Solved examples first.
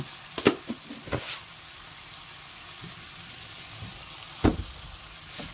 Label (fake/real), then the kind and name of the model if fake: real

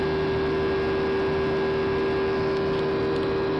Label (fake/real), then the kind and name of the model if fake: real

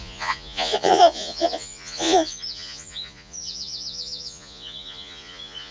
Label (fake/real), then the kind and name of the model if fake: fake, vocoder, Vocos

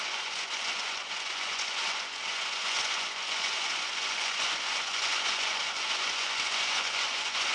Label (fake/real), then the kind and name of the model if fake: fake, vocoder, Vocos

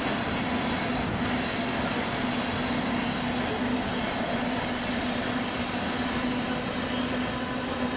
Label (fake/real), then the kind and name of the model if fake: real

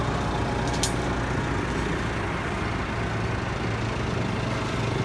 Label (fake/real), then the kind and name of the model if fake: real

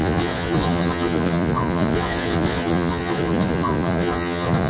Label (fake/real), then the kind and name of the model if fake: fake, vocoder, Vocos